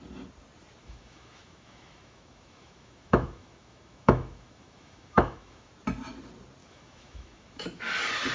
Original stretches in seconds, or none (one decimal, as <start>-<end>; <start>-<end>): 0.0-0.8; 5.7-6.6; 7.8-8.3